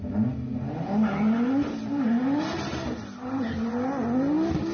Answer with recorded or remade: recorded